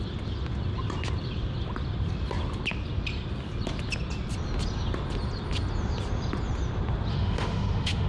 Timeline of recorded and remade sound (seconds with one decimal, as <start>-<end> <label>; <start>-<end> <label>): 0.0-7.1 recorded; 7.1-8.1 remade